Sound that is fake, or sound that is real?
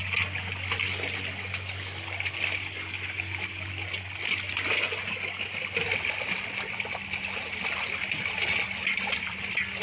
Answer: real